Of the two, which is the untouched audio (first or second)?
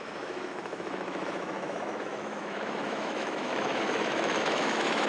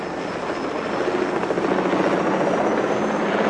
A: second